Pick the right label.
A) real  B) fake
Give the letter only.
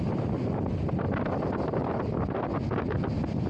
A